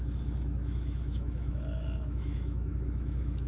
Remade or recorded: remade